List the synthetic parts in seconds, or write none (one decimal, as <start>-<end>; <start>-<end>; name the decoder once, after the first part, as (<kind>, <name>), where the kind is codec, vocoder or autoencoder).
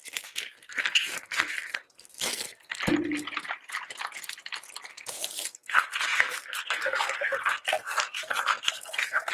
0.0-2.8 (codec, SNAC); 4.9-9.3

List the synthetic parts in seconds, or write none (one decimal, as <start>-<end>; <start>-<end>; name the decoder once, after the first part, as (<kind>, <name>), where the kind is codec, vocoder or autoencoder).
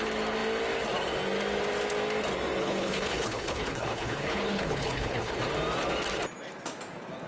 2.6-5.3 (codec, HILCodec)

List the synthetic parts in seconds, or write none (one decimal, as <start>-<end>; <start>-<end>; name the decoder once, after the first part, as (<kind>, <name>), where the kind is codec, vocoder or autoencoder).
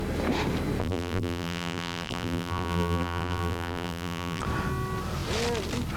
0.8-4.4 (vocoder, BigVGAN v2)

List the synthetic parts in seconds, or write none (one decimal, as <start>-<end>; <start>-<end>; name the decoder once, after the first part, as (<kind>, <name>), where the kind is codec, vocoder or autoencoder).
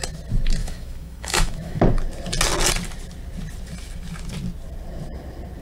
0.6-1.8 (autoencoder, DAC-VAE)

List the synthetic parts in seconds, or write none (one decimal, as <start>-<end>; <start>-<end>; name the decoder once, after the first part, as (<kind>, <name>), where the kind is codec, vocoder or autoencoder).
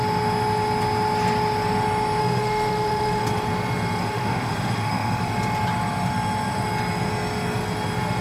2.2-3.2 (autoencoder, DAC-VAE); 4.0-5.2